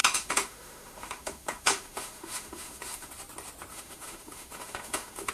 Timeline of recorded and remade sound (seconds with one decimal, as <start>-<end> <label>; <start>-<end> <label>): 0.0-3.1 remade; 3.1-3.7 recorded; 3.7-5.3 remade